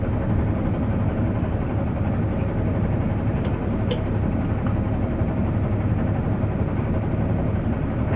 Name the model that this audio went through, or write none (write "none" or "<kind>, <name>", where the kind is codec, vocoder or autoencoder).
none